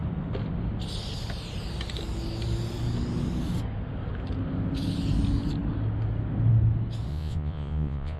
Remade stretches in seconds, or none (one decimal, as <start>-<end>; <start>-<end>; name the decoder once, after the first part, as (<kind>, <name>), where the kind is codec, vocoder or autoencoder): 7.1-8.2 (vocoder, Vocos)